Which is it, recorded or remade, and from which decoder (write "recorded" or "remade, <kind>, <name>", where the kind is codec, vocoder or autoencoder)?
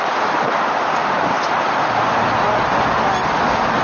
recorded